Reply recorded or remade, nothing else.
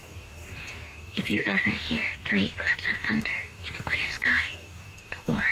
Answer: remade